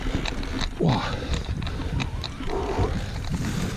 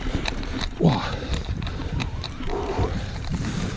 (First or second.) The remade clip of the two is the second